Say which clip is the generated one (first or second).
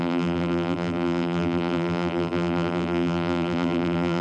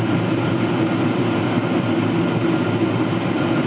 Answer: first